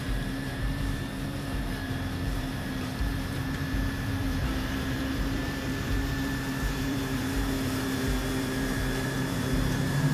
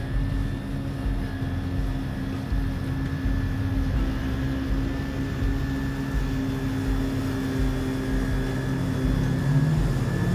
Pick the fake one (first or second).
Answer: first